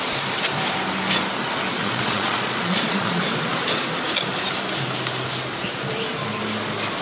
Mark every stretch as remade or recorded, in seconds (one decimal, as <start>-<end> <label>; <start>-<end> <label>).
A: 0.0-1.7 recorded; 1.7-3.2 remade; 3.2-7.0 recorded